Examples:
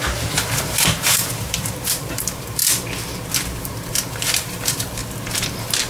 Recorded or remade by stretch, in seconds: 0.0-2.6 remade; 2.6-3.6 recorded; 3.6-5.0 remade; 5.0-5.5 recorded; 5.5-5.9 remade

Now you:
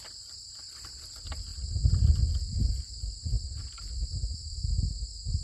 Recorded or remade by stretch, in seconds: 0.0-1.5 recorded; 1.5-3.1 remade; 3.1-5.4 recorded